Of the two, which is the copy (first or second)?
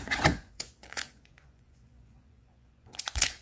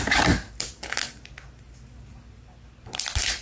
first